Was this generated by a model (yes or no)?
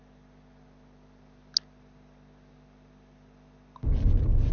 no